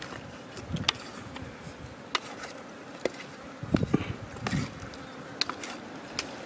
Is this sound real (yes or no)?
yes